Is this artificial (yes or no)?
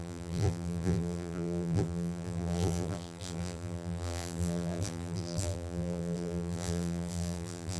yes